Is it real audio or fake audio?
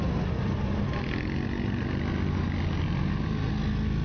real